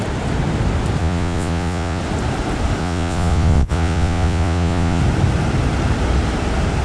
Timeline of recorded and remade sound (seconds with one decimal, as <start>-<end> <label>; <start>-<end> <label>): 0.0-1.0 recorded; 1.0-2.0 remade; 2.0-2.8 recorded; 2.8-5.0 remade; 5.0-6.8 recorded

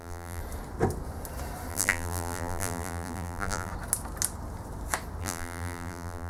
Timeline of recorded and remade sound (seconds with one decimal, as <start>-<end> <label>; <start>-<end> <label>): 0.0-0.4 remade; 0.4-1.7 recorded; 1.7-3.7 remade; 3.7-5.2 recorded; 5.2-6.3 remade

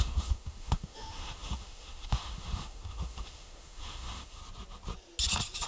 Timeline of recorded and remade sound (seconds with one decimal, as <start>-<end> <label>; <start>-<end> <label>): 0.0-4.4 remade; 4.4-5.7 recorded